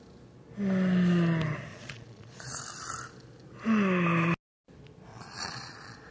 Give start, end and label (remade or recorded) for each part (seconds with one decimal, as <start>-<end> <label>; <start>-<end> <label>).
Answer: 0.0-1.7 recorded; 1.7-2.6 remade; 2.6-5.1 recorded; 5.1-6.1 remade